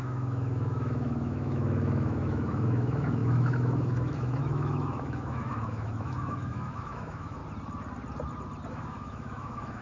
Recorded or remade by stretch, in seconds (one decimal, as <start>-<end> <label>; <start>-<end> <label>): 0.0-7.4 remade; 7.4-8.7 recorded; 8.7-9.8 remade